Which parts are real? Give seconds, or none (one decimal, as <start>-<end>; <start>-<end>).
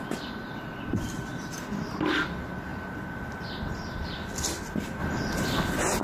0.0-6.0